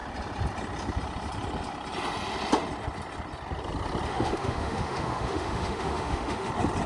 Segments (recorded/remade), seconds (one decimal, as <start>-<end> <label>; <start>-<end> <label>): 0.0-4.1 recorded; 4.1-6.5 remade; 6.5-6.9 recorded